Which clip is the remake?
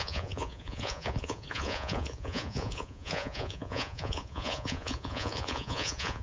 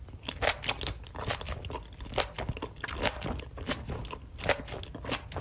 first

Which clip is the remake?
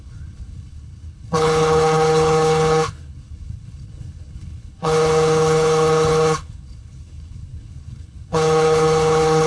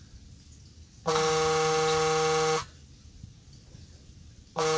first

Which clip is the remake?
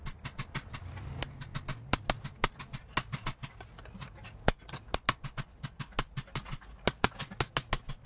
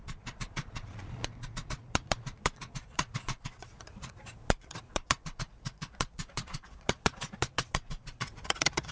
second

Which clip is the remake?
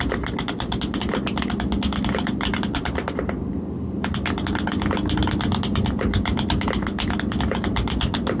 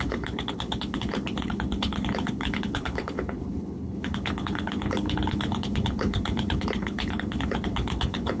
second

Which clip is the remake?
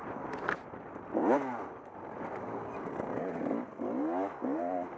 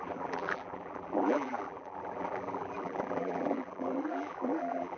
second